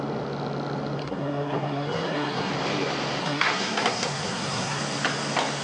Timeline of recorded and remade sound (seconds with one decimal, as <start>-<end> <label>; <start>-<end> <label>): 0.0-1.0 recorded; 1.0-2.5 remade; 2.5-3.2 recorded; 3.2-4.8 remade; 4.8-5.6 recorded